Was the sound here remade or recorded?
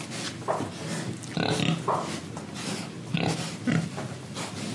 recorded